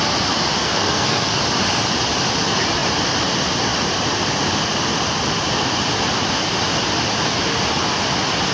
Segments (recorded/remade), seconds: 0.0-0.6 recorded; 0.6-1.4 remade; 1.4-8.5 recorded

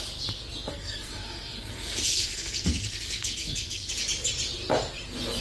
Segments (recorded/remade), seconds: 0.0-0.7 recorded; 0.7-3.9 remade; 3.9-5.4 recorded

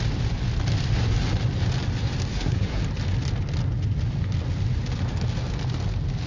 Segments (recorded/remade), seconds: 0.0-2.3 recorded; 2.3-2.8 remade; 2.8-6.3 recorded

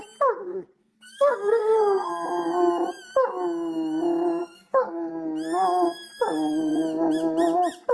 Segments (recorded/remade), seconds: 0.0-0.8 recorded; 0.8-2.1 remade; 2.1-4.4 recorded; 4.4-5.1 remade; 5.1-7.9 recorded

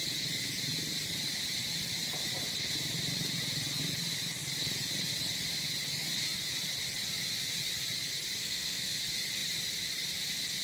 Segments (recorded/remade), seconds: 0.0-8.4 recorded; 8.4-9.0 remade; 9.0-10.6 recorded

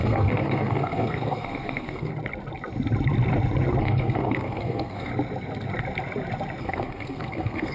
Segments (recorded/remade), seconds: 0.0-2.1 remade; 2.1-3.8 recorded; 3.8-5.1 remade; 5.1-6.6 recorded; 6.6-7.7 remade

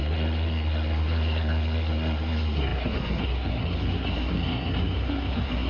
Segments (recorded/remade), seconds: 0.0-5.7 remade